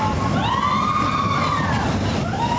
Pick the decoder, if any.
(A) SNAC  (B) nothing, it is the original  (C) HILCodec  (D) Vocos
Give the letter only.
B